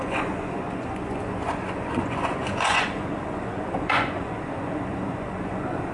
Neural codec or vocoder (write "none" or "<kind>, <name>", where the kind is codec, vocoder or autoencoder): vocoder, Vocos